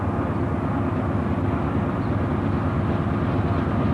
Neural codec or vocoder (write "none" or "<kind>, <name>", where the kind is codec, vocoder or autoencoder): none